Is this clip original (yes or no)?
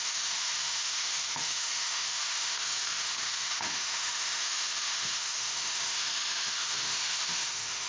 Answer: no